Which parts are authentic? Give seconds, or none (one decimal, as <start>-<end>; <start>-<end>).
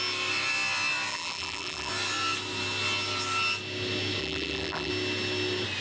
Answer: 0.0-1.1; 1.9-4.2; 4.9-5.8